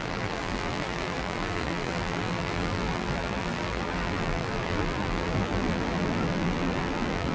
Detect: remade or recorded remade